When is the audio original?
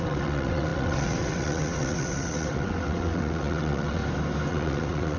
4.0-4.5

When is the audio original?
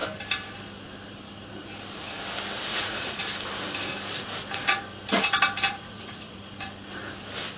0.0-2.7; 3.2-5.7; 6.4-7.6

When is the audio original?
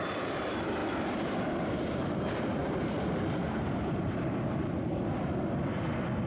0.0-0.8; 2.2-2.6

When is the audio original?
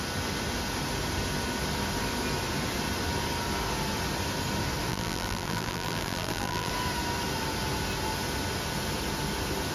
0.0-4.9; 6.7-9.7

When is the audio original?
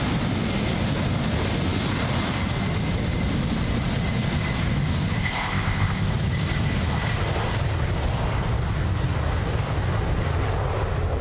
0.0-5.2; 6.1-11.2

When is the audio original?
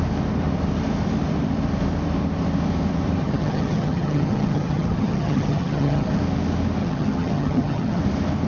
0.0-3.2; 6.2-6.8; 8.0-8.5